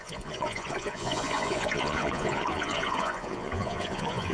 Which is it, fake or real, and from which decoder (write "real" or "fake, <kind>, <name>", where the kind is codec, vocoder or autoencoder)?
fake, vocoder, Vocos